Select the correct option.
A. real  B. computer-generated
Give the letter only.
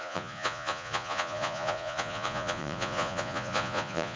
B